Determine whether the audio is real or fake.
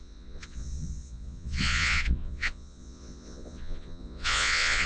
fake